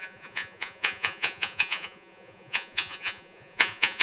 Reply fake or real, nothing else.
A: fake